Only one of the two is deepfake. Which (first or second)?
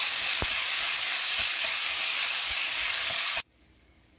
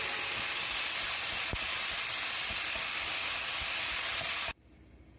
first